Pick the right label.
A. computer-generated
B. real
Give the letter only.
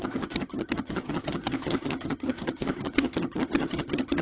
A